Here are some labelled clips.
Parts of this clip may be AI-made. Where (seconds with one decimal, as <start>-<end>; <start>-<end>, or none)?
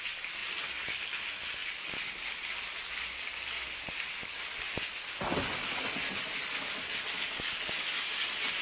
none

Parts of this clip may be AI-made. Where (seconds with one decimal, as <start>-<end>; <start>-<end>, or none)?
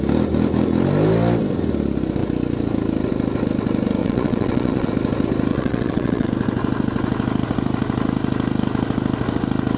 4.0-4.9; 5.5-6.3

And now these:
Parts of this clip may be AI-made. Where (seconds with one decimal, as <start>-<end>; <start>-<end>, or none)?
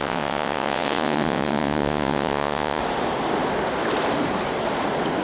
0.0-2.8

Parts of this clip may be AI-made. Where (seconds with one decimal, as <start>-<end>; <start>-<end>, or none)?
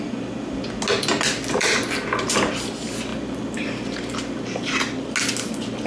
none